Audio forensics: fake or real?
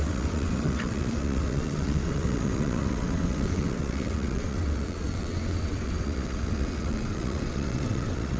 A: fake